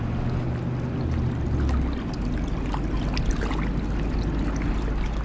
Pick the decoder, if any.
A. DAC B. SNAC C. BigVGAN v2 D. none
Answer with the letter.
D